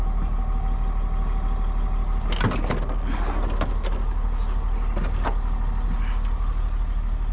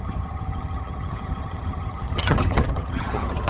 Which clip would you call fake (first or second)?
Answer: second